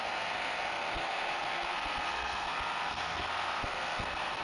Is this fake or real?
fake